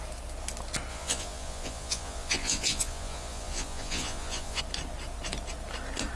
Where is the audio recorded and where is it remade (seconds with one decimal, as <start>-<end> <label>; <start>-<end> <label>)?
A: 0.0-0.9 recorded; 0.9-4.6 remade; 4.6-6.2 recorded